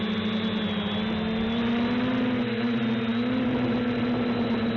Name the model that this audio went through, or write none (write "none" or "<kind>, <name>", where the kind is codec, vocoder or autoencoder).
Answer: none